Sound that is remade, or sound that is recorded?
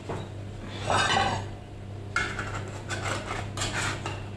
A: recorded